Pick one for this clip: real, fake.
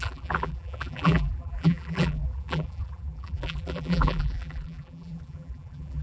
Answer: fake